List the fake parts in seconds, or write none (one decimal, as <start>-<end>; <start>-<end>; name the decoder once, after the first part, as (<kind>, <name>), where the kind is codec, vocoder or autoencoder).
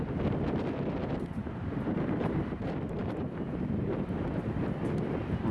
1.4-2.6 (vocoder, BigVGAN v2); 3.0-4.6